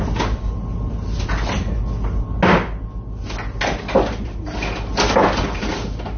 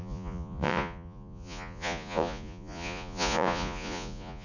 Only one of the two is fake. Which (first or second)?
second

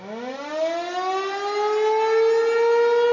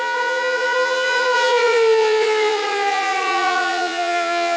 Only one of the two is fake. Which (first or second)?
second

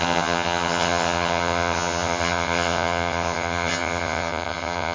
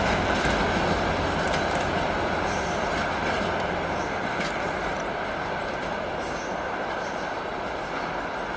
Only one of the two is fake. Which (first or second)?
first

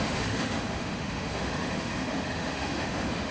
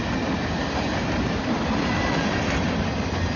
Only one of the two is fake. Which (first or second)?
first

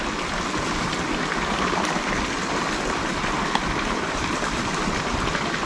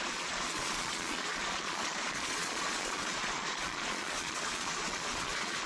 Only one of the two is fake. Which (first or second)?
second